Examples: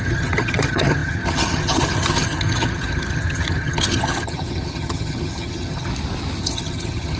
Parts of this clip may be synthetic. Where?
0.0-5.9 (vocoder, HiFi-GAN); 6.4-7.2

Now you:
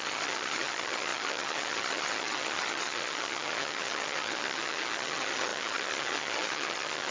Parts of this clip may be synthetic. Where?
0.0-7.1 (vocoder, HiFi-GAN)

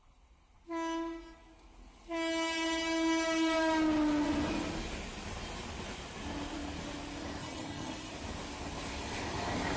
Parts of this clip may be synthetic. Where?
7.4-8.1 (vocoder, HiFi-GAN)

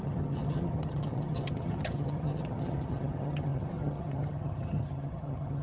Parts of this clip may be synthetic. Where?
0.0-5.6 (vocoder, HiFi-GAN)

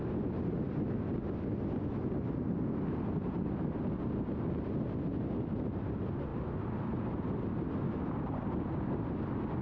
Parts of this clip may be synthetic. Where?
none

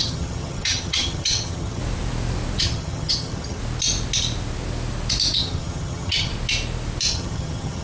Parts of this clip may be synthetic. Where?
0.0-1.8 (vocoder, HiFi-GAN); 2.6-3.6; 5.4-6.3; 7.1-7.8

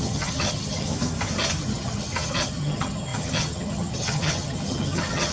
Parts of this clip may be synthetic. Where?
0.0-0.9 (vocoder, HiFi-GAN); 1.6-5.3